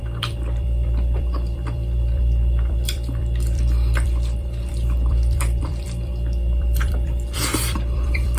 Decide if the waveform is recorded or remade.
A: remade